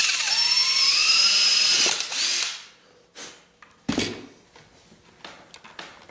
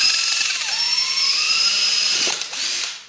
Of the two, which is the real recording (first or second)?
first